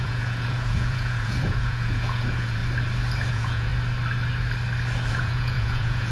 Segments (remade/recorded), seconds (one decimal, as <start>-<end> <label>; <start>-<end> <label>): 0.0-2.6 remade; 2.6-3.3 recorded; 3.3-3.7 remade; 3.7-5.1 recorded; 5.1-6.1 remade